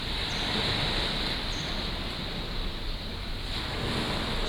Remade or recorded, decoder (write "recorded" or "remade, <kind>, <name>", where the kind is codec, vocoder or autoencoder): recorded